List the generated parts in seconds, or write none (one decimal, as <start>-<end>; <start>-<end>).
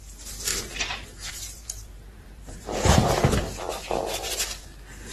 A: 0.5-3.6